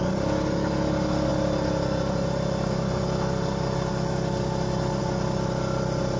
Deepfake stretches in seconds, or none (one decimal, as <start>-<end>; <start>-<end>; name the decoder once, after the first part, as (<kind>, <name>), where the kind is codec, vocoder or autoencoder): none